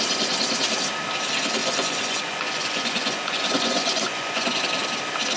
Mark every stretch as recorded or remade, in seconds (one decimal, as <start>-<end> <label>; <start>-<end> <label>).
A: 0.0-1.6 recorded; 1.6-4.6 remade; 4.6-5.4 recorded